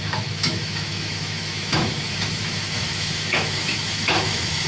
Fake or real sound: fake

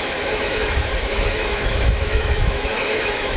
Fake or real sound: fake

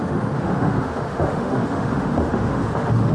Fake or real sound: fake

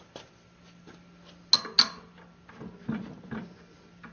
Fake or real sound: real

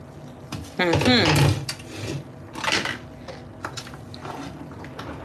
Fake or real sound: real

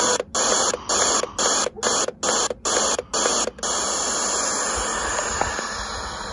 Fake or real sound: real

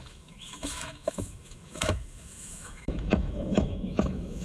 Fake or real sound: fake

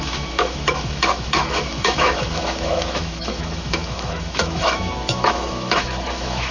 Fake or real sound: fake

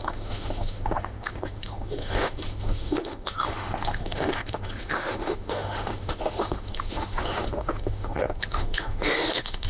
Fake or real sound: fake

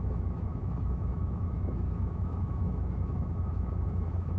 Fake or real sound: fake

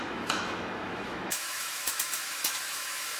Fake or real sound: fake